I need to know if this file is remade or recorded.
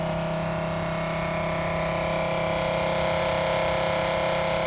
recorded